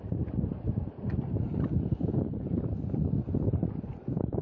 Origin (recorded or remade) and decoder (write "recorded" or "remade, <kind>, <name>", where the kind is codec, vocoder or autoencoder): recorded